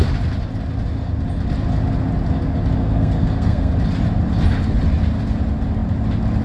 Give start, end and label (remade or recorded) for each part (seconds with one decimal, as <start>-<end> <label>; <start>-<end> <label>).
0.0-2.8 recorded; 2.8-3.7 remade; 3.7-6.4 recorded